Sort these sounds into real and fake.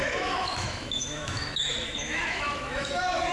fake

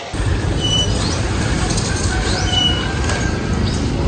fake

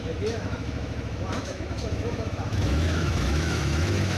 fake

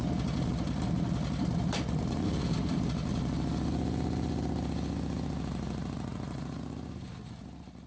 real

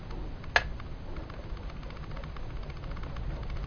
real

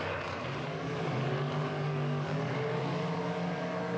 fake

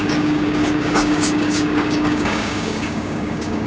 fake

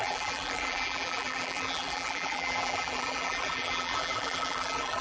fake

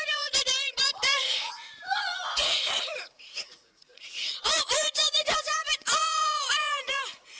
fake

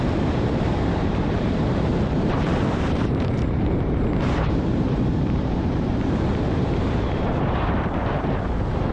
fake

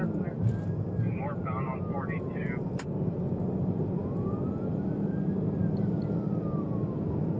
fake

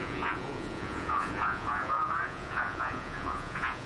fake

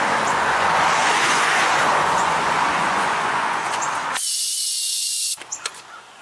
fake